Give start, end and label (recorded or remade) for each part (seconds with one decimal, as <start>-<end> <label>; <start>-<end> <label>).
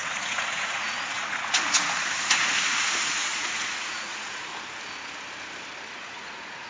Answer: 0.0-4.5 remade; 4.5-5.9 recorded; 5.9-6.7 remade